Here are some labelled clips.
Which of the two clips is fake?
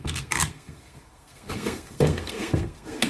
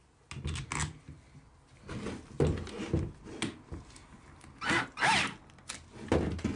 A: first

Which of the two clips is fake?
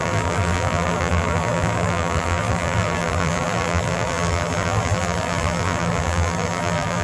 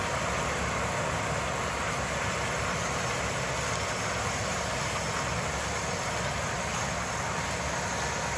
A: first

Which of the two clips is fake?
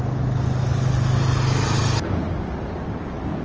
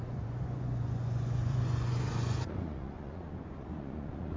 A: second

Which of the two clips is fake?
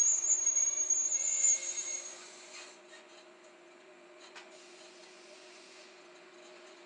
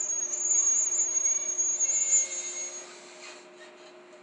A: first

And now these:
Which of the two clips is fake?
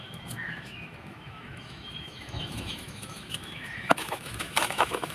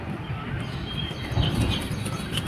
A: first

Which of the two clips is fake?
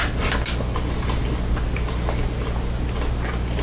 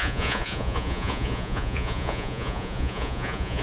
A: second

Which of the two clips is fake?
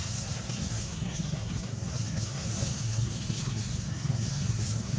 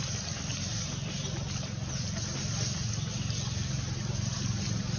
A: first